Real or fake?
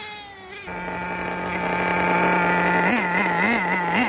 real